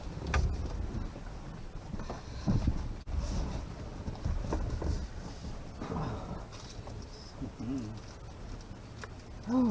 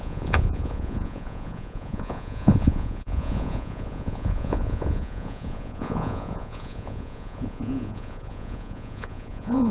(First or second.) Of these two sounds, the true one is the first